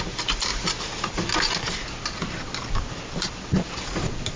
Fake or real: real